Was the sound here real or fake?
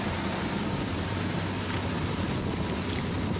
real